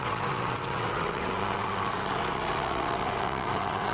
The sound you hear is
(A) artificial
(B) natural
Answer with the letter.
A